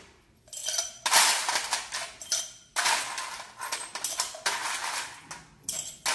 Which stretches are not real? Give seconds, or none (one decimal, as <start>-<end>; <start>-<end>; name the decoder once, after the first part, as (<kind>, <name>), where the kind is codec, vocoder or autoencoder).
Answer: none